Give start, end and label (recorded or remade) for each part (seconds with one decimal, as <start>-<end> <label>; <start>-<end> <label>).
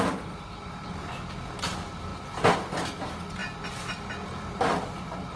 0.0-5.4 recorded